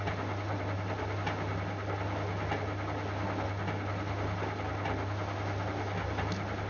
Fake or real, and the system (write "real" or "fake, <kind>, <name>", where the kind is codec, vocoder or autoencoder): real